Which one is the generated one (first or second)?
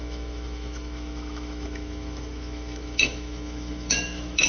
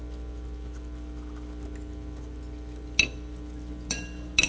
first